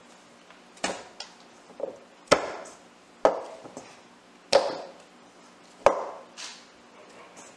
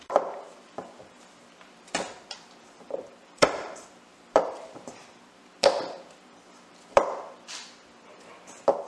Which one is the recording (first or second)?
first